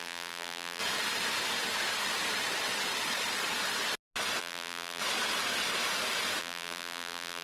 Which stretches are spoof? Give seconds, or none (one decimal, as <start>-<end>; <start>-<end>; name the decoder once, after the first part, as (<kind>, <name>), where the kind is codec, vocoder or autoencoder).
0.0-0.8 (vocoder, BigVGAN v2); 4.4-5.0; 6.4-7.4